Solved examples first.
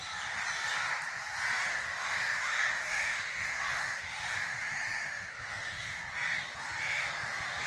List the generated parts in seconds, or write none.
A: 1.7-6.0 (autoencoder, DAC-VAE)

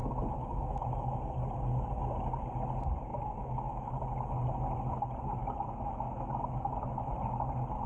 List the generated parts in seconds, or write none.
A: 0.0-1.2 (autoencoder, DAC-VAE); 3.1-3.9; 5.4-7.1

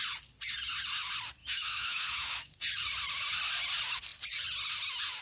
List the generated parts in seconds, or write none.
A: 1.4-2.5 (autoencoder, DAC-VAE)